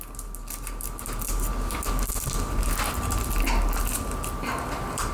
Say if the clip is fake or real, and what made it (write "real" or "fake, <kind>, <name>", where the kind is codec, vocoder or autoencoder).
real